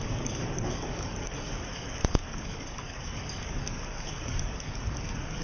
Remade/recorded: remade